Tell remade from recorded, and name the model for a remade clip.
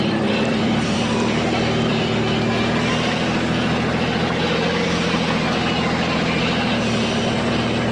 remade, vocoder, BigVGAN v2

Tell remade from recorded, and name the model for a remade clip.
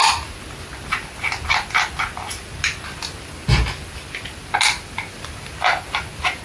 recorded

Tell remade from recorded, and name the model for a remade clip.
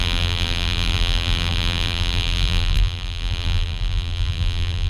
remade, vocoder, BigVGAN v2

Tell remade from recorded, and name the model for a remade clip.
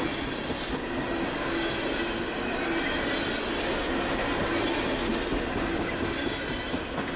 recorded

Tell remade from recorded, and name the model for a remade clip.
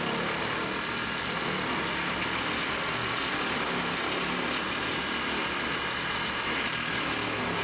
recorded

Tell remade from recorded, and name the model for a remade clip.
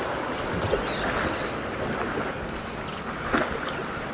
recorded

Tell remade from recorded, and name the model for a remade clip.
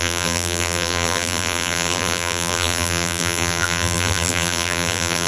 remade, vocoder, BigVGAN v2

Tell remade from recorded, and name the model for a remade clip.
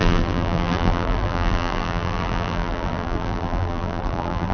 remade, vocoder, BigVGAN v2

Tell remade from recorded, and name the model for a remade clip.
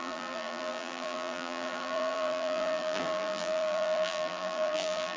remade, vocoder, BigVGAN v2